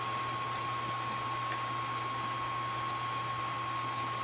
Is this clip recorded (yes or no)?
yes